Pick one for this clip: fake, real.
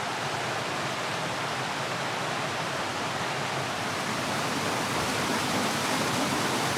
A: real